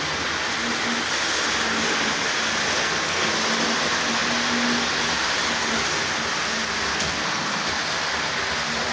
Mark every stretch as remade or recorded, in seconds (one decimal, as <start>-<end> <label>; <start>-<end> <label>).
0.0-2.8 recorded; 2.8-3.3 remade; 3.3-6.9 recorded; 6.9-7.6 remade; 7.6-8.9 recorded